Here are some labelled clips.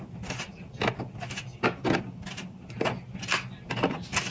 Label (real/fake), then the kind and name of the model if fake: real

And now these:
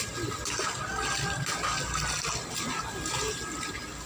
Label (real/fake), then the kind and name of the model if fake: real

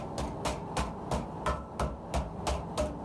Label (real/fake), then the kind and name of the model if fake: real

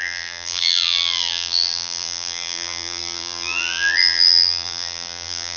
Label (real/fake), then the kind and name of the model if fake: fake, vocoder, BigVGAN v2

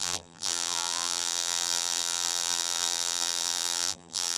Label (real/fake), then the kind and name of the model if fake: fake, vocoder, BigVGAN v2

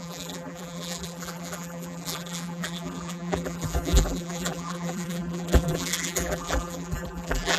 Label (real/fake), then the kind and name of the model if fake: fake, vocoder, BigVGAN v2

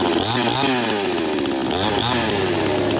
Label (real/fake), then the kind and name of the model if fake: real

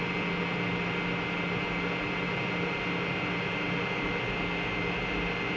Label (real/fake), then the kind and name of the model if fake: real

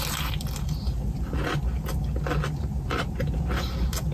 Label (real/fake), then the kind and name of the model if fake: real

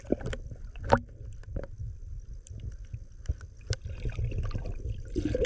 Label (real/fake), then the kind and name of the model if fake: real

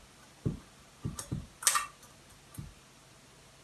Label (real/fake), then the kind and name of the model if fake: real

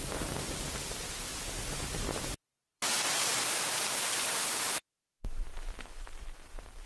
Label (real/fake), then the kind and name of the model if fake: fake, vocoder, BigVGAN v2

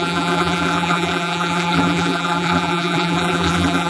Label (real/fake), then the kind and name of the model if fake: fake, vocoder, BigVGAN v2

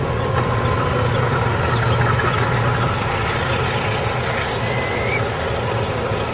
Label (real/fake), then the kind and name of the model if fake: real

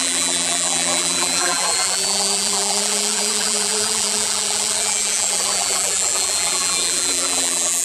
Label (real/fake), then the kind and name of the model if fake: fake, vocoder, BigVGAN v2